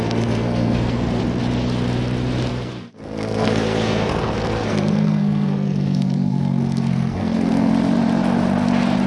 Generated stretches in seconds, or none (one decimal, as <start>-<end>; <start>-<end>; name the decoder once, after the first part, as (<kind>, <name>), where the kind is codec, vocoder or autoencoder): 0.0-1.2 (codec, SNAC); 2.5-7.7